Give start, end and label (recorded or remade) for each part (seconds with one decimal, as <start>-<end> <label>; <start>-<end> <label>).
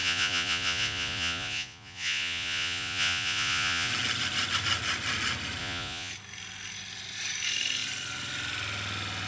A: 0.0-3.9 remade; 3.9-5.6 recorded; 5.6-6.1 remade; 6.1-9.3 recorded